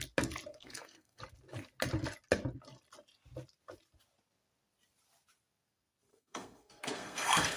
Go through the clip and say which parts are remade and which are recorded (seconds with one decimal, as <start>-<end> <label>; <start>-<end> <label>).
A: 0.0-0.5 recorded; 0.5-1.2 remade; 1.2-6.1 recorded; 6.1-7.6 remade

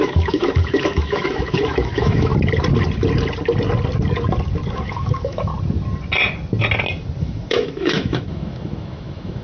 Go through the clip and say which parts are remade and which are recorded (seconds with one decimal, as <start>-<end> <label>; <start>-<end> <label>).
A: 0.0-2.3 remade; 2.3-4.7 recorded; 4.7-5.5 remade; 5.5-7.2 recorded; 7.2-9.4 remade

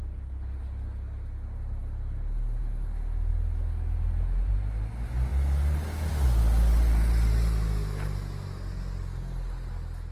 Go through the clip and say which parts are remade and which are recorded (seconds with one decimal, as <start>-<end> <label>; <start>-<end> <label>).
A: 0.0-10.1 recorded